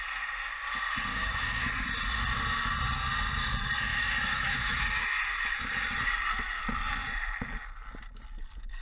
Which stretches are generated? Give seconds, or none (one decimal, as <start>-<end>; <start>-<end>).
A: 1.1-1.7; 3.9-4.8